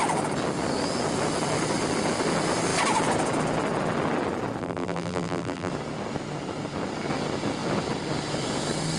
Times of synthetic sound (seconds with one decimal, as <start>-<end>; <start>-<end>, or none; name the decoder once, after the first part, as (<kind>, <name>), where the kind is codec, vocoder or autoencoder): 4.6-5.7 (vocoder, BigVGAN v2)